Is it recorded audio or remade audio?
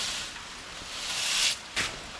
remade